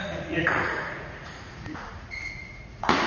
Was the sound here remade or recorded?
remade